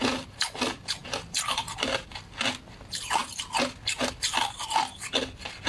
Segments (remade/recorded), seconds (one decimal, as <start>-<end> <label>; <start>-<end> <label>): 0.0-5.7 recorded